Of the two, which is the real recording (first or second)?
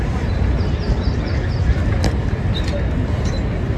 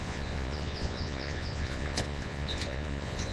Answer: first